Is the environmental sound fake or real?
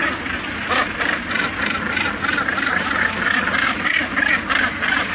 real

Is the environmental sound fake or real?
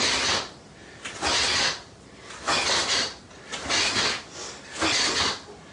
real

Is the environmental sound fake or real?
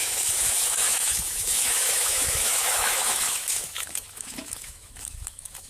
fake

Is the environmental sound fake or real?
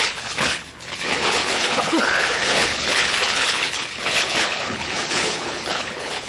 fake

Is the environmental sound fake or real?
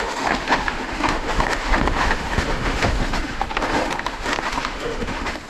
fake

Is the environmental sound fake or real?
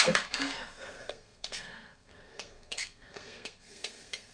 fake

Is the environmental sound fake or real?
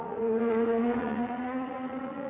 fake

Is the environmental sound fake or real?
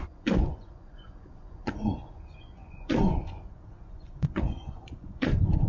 fake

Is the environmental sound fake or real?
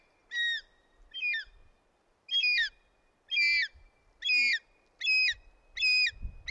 real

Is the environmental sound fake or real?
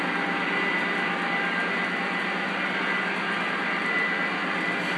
real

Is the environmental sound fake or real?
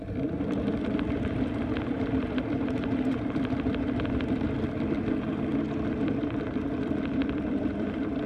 fake